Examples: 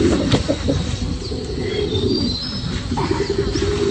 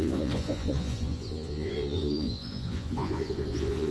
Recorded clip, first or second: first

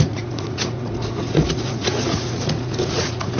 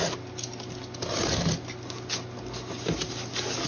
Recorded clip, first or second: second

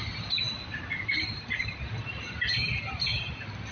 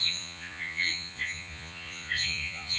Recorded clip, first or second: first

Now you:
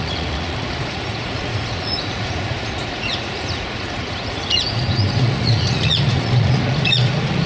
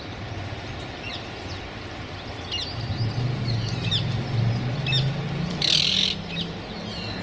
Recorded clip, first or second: second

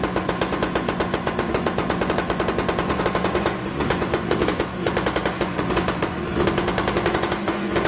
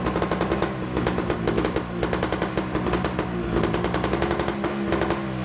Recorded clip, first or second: second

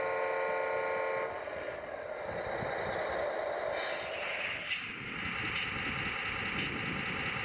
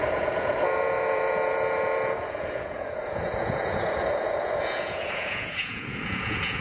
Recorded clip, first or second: first